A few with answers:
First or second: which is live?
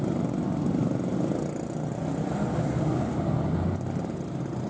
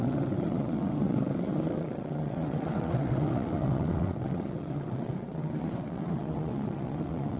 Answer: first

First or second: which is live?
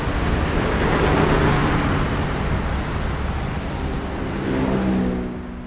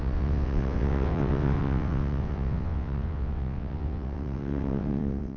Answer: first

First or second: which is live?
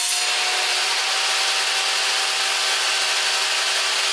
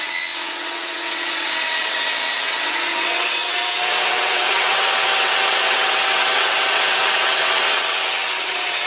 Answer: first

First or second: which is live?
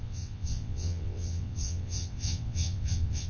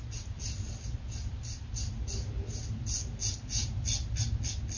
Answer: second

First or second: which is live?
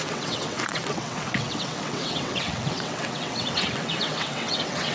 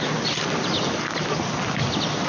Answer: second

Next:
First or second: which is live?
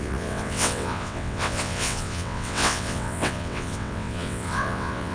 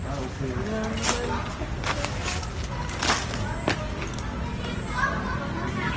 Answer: second